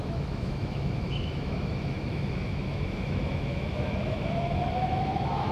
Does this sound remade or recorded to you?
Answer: remade